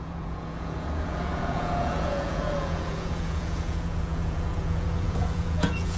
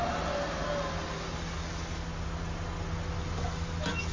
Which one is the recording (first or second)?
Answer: second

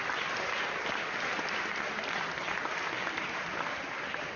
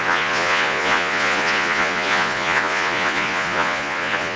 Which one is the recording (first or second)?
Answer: first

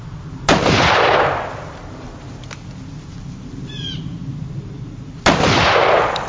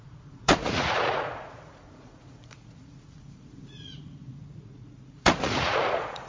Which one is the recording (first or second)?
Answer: first